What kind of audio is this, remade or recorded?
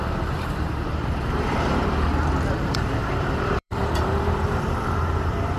remade